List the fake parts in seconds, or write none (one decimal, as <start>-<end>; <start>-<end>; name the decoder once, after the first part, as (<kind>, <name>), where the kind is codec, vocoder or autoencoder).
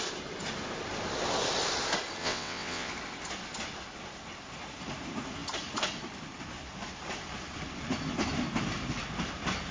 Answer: 2.2-2.9 (vocoder, WaveNeXt)